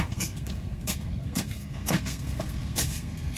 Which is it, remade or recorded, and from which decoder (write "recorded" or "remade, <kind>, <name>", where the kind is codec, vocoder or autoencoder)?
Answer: remade, codec, SNAC